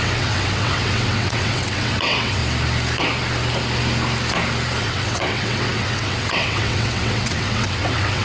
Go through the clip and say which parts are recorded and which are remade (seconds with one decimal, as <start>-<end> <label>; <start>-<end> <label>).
0.0-2.4 remade; 2.4-4.8 recorded; 4.8-8.2 remade